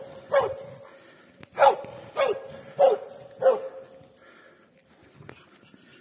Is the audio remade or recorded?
recorded